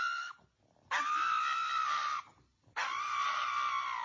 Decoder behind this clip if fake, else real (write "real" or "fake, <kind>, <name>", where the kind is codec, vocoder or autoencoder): real